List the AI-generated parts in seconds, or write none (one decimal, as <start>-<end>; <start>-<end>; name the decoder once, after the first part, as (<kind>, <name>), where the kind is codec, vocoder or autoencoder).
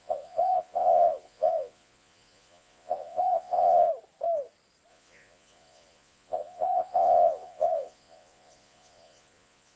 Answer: 0.0-3.9 (vocoder, Vocos); 4.9-9.8